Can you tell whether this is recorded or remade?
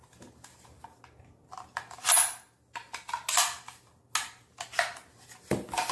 recorded